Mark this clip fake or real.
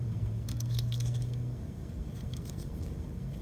fake